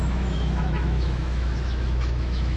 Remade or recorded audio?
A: remade